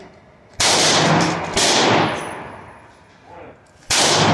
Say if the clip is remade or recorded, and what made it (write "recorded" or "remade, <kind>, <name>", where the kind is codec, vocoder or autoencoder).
recorded